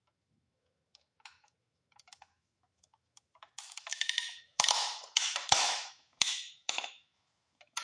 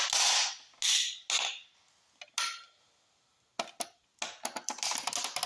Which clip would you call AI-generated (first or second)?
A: first